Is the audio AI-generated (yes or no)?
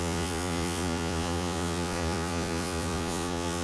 yes